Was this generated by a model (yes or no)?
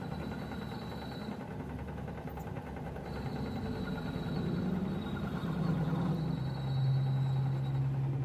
no